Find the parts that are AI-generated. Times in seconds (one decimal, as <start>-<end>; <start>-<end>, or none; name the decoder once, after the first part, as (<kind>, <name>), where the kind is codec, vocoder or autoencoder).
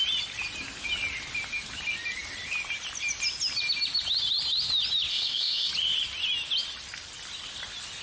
5.1-5.7 (codec, ZipCodec)